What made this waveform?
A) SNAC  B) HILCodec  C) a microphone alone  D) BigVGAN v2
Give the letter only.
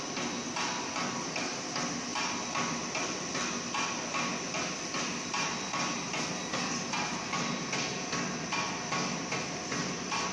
C